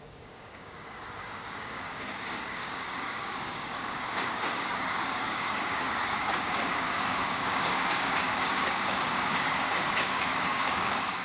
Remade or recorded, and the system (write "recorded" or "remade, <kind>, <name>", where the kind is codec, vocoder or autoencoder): remade, codec, DAC